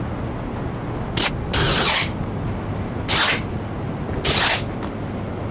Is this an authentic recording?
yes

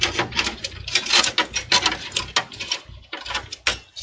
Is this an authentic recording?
yes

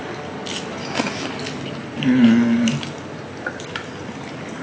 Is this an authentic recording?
yes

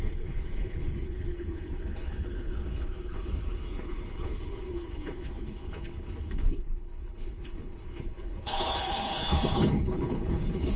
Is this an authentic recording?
no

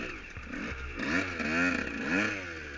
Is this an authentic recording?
yes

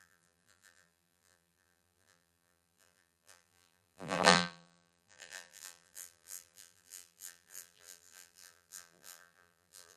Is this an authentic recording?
no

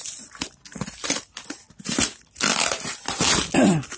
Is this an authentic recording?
yes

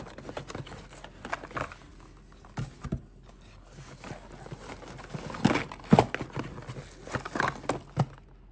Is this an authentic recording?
yes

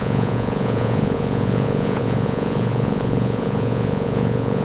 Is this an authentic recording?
no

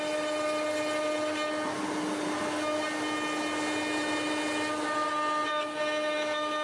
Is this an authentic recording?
yes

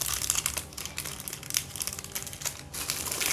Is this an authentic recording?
yes